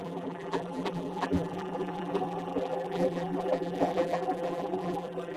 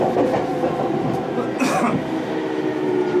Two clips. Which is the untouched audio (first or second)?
second